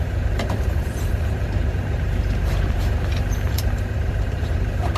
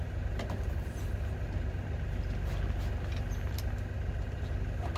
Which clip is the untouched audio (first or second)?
second